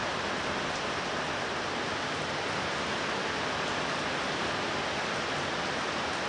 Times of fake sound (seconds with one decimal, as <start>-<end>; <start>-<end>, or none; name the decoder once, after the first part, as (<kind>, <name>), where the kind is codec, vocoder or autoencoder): none